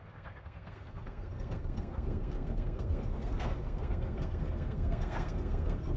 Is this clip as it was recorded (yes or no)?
no